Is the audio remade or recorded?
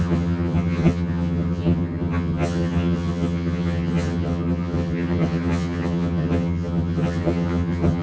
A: remade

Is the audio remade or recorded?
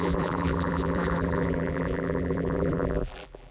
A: remade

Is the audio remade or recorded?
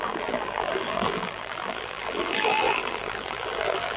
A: remade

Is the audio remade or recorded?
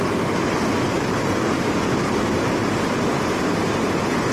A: recorded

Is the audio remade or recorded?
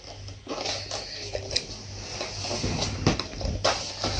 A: recorded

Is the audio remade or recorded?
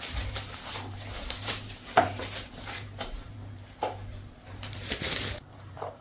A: remade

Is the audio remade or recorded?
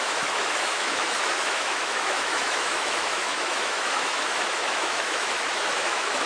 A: remade